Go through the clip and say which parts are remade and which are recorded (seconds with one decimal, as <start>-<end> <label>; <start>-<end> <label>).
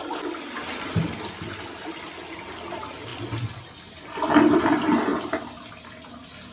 0.0-6.5 recorded